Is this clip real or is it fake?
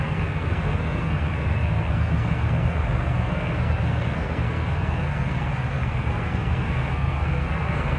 fake